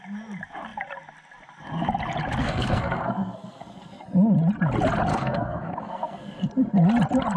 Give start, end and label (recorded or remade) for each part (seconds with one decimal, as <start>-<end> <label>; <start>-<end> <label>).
0.0-2.4 recorded; 2.4-4.0 remade; 4.0-5.1 recorded; 5.1-6.4 remade; 6.4-7.4 recorded